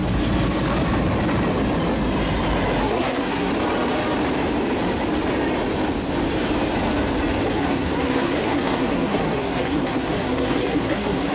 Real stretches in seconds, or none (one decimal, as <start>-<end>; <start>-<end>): 0.0-2.8; 3.5-7.5